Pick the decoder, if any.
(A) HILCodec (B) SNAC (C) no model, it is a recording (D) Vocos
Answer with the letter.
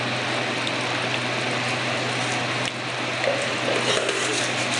C